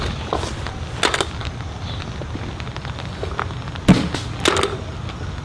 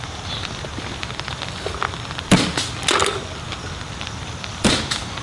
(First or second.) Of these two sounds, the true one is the first